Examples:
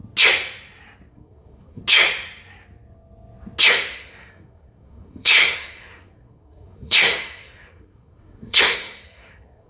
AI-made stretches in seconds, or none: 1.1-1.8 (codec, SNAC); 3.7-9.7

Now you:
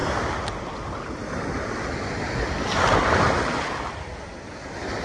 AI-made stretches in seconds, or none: none

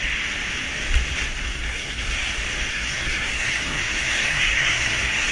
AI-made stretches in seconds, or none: 1.4-2.3 (codec, SNAC); 2.7-5.3

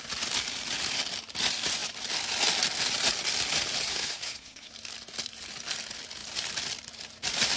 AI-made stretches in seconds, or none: 3.9-4.7 (codec, SNAC)